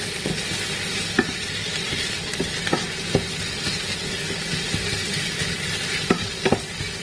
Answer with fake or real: real